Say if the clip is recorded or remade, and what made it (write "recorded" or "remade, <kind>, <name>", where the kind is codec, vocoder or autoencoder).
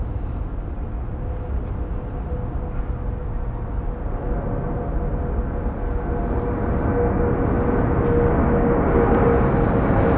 recorded